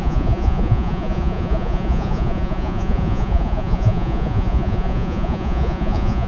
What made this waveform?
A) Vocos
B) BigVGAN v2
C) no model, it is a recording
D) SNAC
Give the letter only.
A